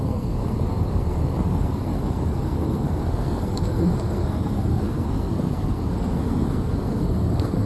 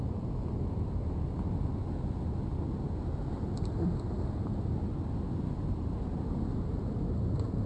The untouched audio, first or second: second